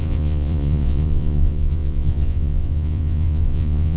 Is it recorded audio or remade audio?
remade